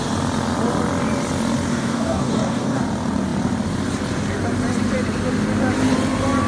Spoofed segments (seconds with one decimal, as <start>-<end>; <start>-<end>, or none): 1.7-2.8